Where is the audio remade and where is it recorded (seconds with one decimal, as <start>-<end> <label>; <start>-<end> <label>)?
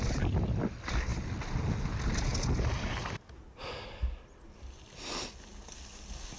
0.0-6.4 recorded